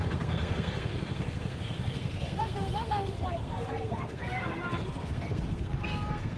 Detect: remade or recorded remade